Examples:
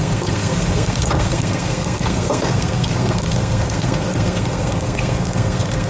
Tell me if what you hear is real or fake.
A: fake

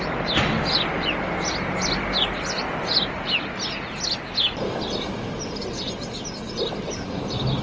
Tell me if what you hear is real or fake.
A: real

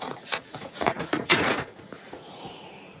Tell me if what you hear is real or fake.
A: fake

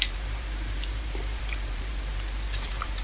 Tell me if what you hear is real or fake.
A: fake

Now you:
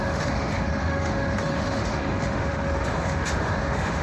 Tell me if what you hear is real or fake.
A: fake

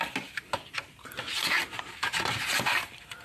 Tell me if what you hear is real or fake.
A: real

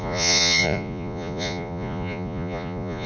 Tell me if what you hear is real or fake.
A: fake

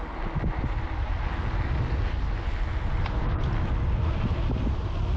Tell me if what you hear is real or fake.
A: real